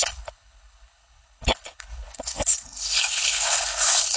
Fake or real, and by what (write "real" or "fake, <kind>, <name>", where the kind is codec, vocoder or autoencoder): fake, codec, HILCodec